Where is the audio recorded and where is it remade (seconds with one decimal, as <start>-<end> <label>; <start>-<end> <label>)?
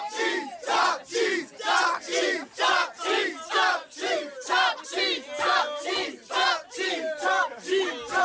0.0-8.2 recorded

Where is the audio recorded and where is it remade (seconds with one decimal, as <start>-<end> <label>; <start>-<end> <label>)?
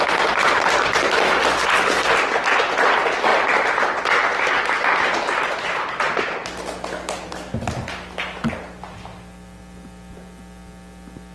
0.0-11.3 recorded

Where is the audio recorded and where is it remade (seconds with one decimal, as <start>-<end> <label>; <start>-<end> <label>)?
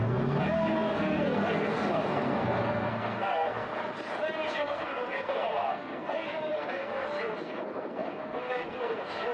0.0-3.7 remade; 3.7-4.5 recorded; 4.5-9.3 remade